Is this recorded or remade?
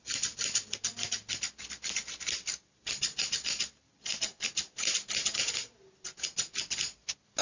recorded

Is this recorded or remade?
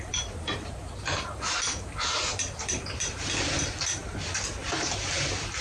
remade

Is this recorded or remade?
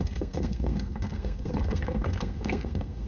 remade